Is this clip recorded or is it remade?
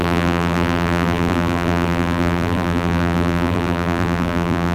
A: remade